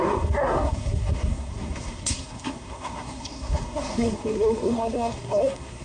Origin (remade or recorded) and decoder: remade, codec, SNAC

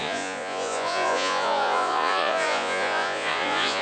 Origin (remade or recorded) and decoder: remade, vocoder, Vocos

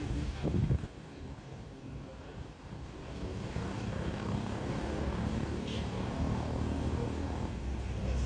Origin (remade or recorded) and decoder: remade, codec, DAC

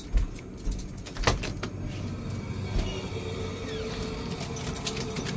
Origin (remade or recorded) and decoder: recorded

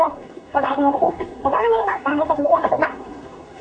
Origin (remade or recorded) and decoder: remade, codec, SNAC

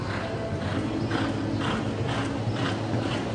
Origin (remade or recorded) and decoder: recorded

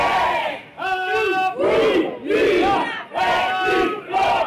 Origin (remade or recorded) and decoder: recorded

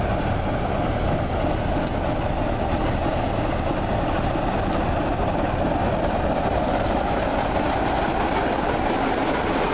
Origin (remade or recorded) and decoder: recorded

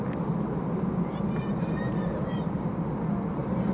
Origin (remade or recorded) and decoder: recorded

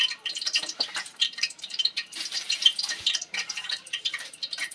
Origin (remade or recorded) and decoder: remade, vocoder, BigVGAN v2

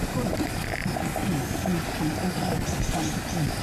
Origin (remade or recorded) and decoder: recorded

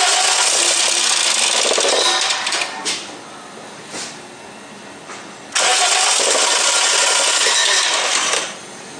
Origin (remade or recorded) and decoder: recorded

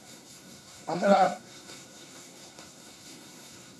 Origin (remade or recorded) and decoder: remade, codec, SNAC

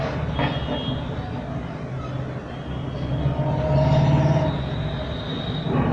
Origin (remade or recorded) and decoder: recorded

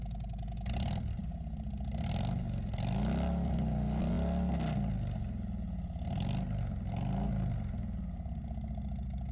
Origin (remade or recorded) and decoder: recorded